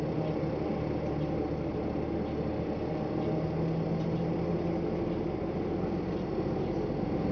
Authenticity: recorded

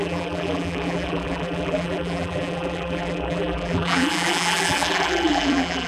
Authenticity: remade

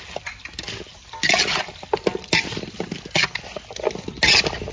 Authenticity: recorded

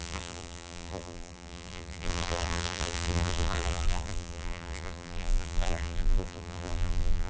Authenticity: remade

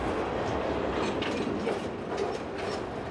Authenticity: recorded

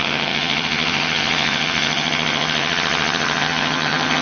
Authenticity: remade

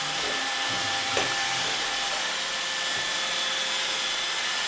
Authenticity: recorded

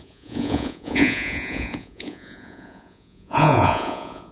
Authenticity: remade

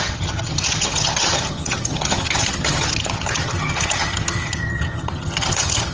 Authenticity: remade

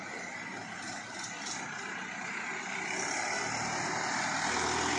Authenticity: recorded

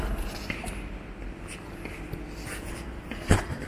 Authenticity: recorded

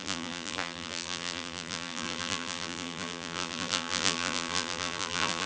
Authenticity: remade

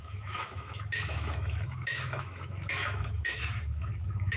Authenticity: remade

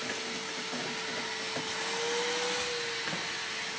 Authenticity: recorded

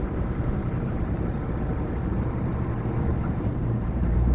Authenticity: remade